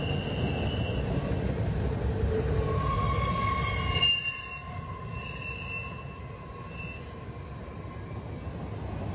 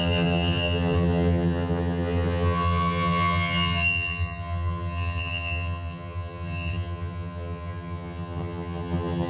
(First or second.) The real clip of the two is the first